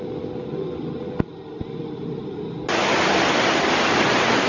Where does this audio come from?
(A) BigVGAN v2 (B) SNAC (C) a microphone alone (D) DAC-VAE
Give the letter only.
C